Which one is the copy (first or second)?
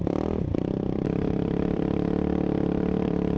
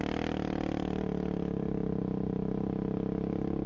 first